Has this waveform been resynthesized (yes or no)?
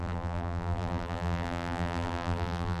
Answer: yes